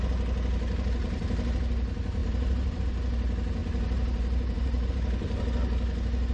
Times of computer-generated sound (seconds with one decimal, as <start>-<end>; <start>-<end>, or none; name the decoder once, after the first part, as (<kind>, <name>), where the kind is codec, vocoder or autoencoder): 1.0-1.6 (vocoder, BigVGAN v2); 2.2-2.8; 3.6-4.9